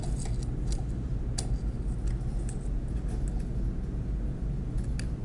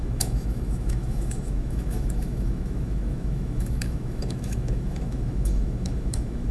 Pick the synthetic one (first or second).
second